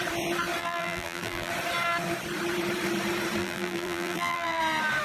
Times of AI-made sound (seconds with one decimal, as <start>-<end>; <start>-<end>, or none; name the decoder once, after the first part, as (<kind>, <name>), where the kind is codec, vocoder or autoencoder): 0.6-1.5 (vocoder, BigVGAN v2); 3.4-4.6